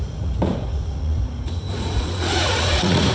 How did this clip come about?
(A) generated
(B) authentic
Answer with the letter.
A